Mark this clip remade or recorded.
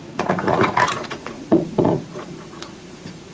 remade